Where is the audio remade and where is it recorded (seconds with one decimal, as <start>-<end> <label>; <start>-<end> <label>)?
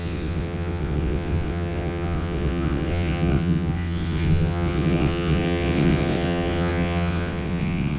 0.0-8.0 remade